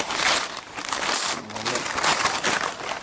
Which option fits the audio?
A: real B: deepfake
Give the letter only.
A